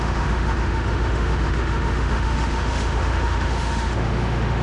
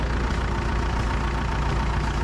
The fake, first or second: first